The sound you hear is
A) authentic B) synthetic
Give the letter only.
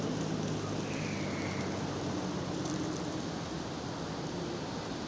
A